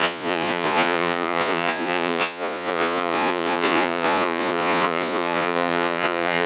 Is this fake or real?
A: fake